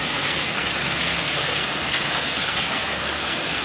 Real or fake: fake